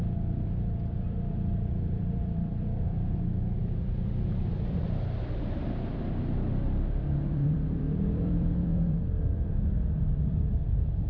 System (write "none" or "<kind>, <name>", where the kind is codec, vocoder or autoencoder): vocoder, BigVGAN v2